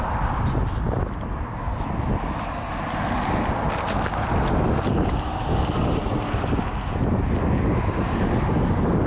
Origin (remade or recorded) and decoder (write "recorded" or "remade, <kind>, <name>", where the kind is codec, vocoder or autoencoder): recorded